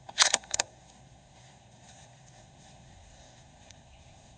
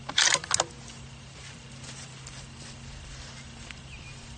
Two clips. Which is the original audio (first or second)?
second